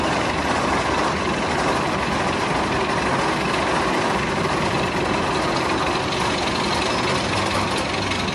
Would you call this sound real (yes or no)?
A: yes